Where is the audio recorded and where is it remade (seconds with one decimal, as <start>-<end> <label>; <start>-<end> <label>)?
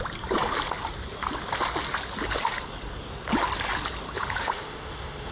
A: 0.0-4.4 recorded; 4.4-5.3 remade